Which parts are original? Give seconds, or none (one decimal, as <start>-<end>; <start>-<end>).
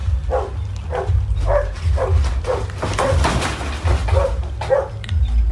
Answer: 0.0-5.5